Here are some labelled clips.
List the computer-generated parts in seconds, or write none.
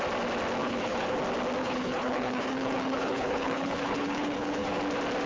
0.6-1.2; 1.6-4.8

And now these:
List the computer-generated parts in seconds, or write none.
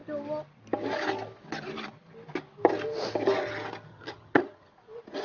3.9-4.7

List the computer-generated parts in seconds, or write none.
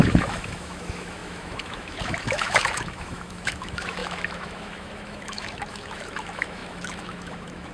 0.0-7.7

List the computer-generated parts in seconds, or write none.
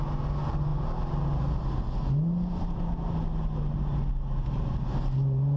none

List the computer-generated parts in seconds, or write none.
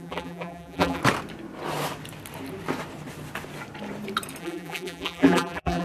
0.0-1.0; 4.4-5.8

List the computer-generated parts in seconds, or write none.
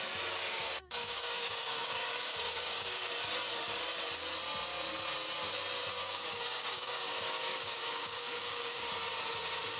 0.4-3.1; 6.0-8.8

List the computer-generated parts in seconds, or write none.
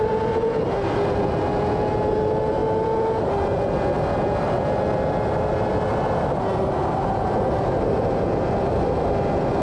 none